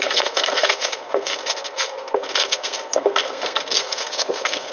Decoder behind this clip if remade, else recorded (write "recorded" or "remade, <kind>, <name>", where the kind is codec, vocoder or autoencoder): remade, codec, SNAC